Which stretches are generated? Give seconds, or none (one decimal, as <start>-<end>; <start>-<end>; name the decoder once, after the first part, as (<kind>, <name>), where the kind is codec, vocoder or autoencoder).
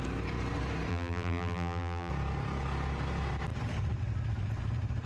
0.9-2.1 (vocoder, BigVGAN v2)